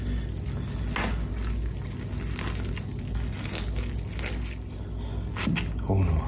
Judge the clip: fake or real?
real